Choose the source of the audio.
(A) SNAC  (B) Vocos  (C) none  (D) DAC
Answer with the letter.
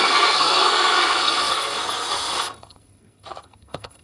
A